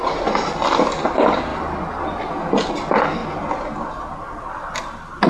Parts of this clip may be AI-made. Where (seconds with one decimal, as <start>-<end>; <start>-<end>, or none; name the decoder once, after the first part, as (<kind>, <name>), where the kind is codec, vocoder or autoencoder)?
none